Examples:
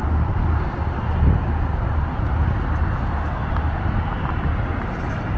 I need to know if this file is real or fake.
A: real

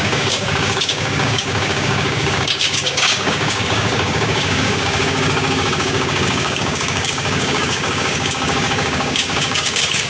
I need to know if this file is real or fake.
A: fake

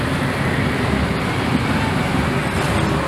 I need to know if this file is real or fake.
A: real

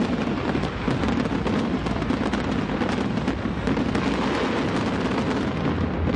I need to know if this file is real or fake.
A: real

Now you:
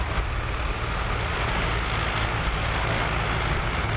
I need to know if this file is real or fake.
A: real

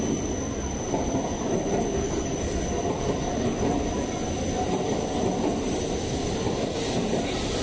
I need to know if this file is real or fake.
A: real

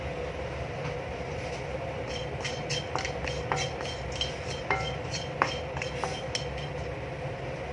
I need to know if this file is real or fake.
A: real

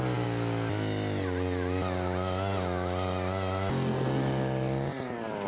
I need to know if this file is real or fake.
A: real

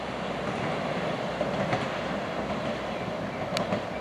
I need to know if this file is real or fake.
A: real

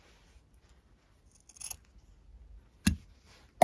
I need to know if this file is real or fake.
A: real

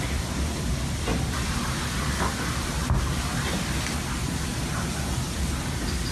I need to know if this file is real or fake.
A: real